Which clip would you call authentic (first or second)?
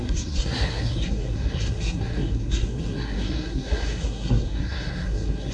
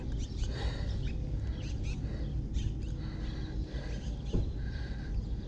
second